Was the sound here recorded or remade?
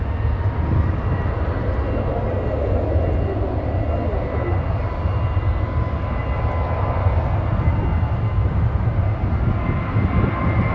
recorded